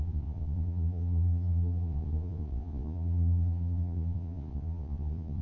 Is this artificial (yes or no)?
yes